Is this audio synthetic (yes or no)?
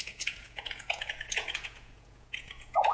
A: yes